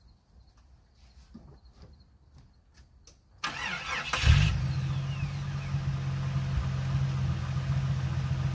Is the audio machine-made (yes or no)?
no